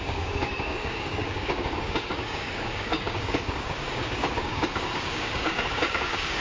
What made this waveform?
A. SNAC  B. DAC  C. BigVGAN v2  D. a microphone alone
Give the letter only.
B